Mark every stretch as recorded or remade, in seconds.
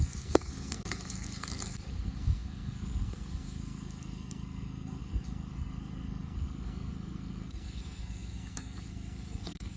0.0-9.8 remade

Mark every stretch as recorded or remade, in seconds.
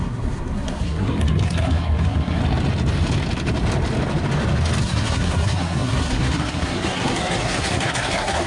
0.0-2.4 remade; 2.4-4.8 recorded; 4.8-8.5 remade